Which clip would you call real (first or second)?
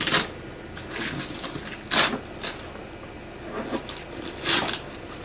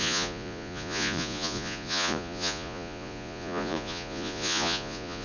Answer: first